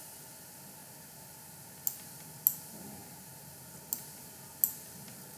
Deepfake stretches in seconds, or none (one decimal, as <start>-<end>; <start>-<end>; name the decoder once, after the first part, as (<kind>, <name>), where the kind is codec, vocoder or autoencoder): none